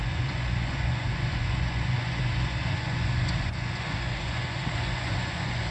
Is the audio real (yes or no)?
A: no